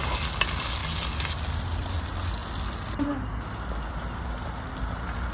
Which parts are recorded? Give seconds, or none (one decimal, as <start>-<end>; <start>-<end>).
0.0-5.3